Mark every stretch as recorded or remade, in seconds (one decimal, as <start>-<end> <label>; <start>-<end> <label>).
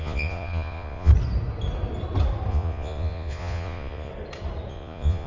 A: 0.0-1.1 remade; 1.1-2.5 recorded; 2.5-4.1 remade; 4.1-4.7 recorded; 4.7-5.3 remade